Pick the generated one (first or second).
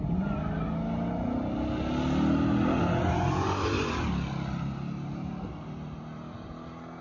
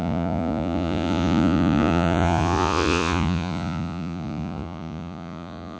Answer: second